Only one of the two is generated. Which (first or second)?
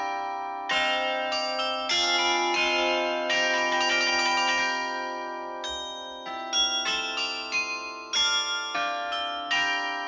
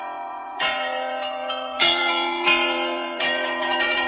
second